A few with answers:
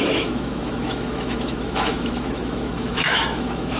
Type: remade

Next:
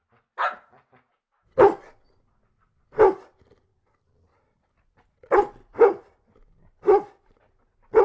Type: recorded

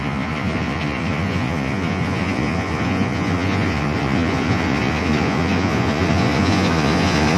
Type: remade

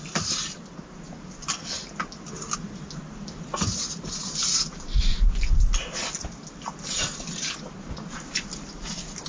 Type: recorded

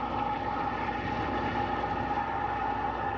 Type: recorded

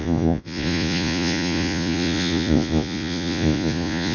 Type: remade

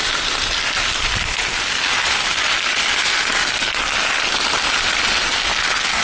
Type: recorded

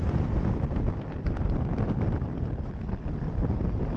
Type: recorded